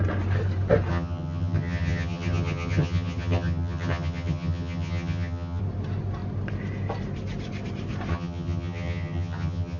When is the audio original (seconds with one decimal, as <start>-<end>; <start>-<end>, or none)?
0.0-0.9; 5.6-8.1

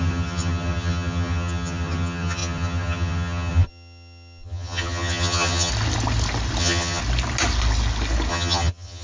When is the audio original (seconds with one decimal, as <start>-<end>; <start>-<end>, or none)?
5.7-6.6; 7.0-8.3

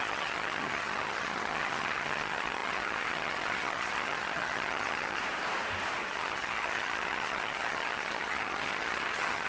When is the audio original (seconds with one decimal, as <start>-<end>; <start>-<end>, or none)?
5.2-6.1

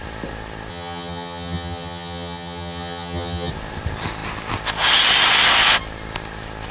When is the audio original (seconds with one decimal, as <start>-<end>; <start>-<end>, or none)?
0.0-0.7; 3.5-6.7

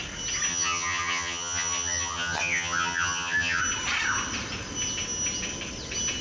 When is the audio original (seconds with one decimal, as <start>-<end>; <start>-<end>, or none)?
0.0-0.5; 3.6-6.2

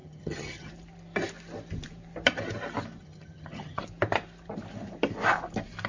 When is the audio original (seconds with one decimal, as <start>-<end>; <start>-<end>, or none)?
0.7-3.0; 3.8-5.9

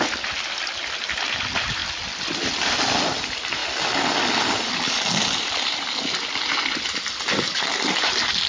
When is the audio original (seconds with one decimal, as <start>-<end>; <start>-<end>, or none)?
0.0-8.5